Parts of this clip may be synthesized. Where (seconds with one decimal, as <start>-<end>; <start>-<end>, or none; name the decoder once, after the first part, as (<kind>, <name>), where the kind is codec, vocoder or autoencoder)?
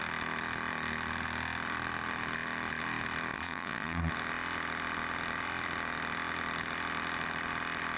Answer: 3.3-4.1 (vocoder, Vocos)